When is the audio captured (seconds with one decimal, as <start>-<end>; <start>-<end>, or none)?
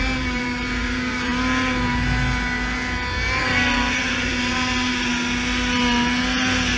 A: 1.3-3.4; 5.1-6.8